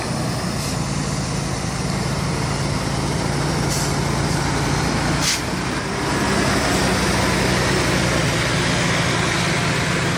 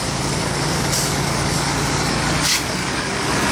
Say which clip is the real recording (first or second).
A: first